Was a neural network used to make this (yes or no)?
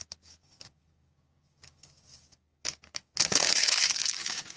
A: yes